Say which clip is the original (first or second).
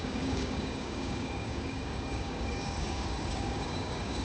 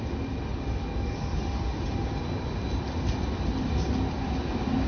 second